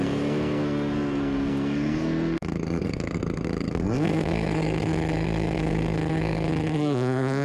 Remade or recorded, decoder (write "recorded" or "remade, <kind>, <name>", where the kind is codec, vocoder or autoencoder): remade, codec, SNAC